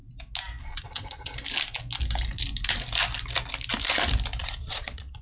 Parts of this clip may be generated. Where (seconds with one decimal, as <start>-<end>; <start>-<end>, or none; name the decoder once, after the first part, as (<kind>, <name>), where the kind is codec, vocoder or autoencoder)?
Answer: 0.6-1.3 (vocoder, Vocos); 4.4-5.2